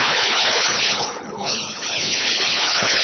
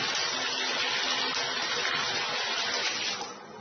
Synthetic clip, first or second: first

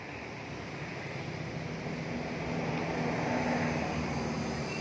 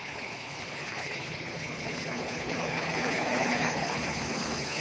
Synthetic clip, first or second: second